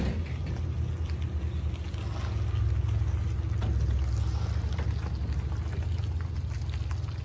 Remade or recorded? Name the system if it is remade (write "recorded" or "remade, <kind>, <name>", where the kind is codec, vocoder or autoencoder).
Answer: recorded